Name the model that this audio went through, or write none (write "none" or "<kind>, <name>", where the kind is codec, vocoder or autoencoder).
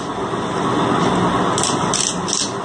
none